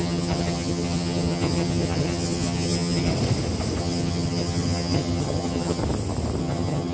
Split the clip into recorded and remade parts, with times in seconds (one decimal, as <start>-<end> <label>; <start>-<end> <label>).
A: 0.0-3.1 remade; 3.1-3.8 recorded; 3.8-5.8 remade; 5.8-6.4 recorded; 6.4-6.9 remade